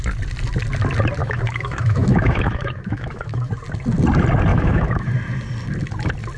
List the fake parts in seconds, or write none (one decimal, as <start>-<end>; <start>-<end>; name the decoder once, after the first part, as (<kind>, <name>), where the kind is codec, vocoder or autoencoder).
1.2-3.5 (autoencoder, DAC-VAE); 4.5-5.1